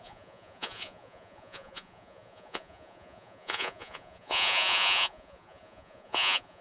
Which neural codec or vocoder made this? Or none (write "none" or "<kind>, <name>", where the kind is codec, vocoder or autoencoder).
vocoder, Vocos